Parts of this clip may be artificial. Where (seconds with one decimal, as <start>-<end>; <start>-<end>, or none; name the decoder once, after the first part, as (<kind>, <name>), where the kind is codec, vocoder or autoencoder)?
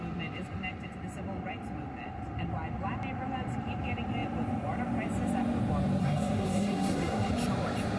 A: 6.0-7.3 (codec, SNAC)